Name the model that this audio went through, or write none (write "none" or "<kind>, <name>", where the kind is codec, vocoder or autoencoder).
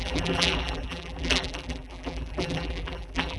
vocoder, BigVGAN v2